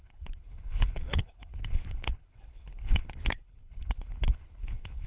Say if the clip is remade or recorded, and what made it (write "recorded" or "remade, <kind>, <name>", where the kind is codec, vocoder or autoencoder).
remade, codec, HILCodec